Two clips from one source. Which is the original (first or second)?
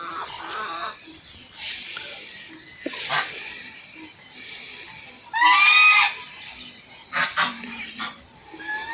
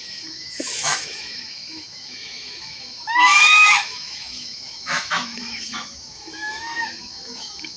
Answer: first